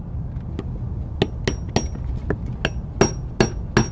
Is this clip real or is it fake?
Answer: real